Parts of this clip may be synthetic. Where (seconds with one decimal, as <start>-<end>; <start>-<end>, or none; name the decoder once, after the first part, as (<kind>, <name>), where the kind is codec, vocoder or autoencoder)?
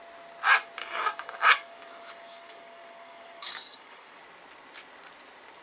0.8-4.2 (codec, DAC)